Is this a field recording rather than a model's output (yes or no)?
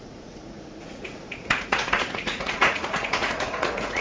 no